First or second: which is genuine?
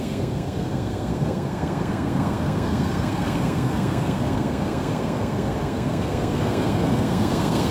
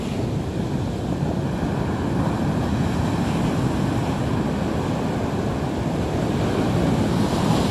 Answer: second